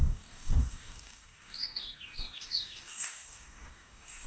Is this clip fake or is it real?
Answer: fake